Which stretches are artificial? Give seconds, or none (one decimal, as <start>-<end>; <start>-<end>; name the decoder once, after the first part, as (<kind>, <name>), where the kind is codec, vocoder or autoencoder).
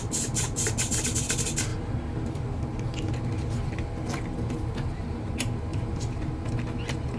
5.7-6.3 (vocoder, BigVGAN v2)